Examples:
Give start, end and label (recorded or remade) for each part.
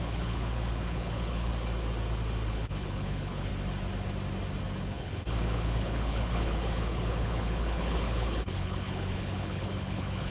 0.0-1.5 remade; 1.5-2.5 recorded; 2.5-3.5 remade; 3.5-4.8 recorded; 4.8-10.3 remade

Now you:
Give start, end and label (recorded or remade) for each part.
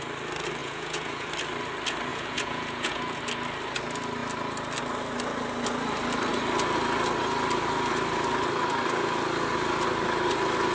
0.0-0.6 recorded; 0.6-1.3 remade; 1.3-2.1 recorded; 2.1-3.2 remade; 3.2-10.7 recorded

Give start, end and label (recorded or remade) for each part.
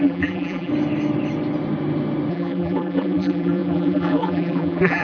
0.0-0.7 remade; 0.7-2.3 recorded; 2.3-5.0 remade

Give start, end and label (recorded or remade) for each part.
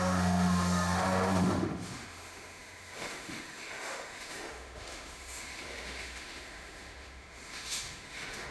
0.0-8.5 remade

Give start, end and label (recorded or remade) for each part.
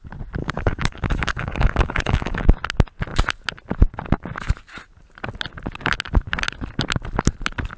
0.0-0.4 recorded; 0.4-2.4 remade; 2.4-7.8 recorded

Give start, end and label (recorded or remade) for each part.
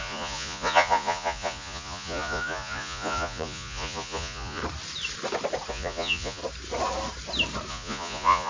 0.0-4.6 remade; 4.6-5.7 recorded; 5.7-6.4 remade; 6.4-7.7 recorded; 7.7-8.5 remade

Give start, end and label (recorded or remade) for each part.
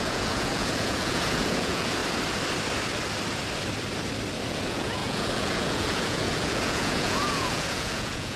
0.0-2.0 remade; 2.0-4.5 recorded; 4.5-8.4 remade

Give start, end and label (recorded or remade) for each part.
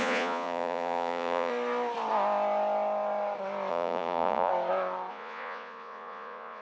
0.0-1.5 remade; 1.5-3.7 recorded; 3.7-4.5 remade; 4.5-5.1 recorded; 5.1-6.6 remade